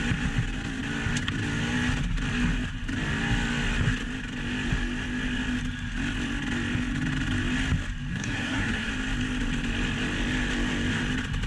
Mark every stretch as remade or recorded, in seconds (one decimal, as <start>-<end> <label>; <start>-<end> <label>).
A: 0.0-8.1 recorded; 8.1-8.9 remade; 8.9-11.5 recorded